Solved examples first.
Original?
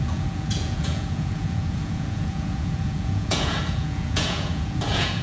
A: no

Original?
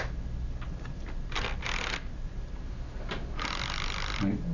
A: yes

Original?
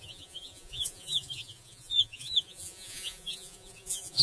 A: no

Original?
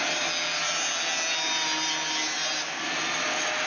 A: yes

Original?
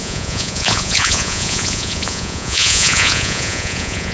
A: no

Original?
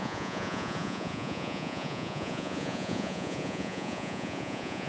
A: no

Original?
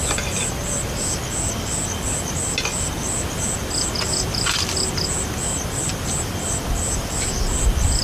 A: yes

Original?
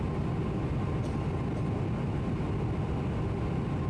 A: yes